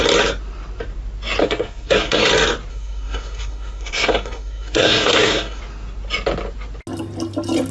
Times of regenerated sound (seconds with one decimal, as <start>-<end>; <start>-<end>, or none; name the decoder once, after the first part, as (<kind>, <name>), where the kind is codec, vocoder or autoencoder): 1.4-2.3 (codec, SNAC); 2.7-5.6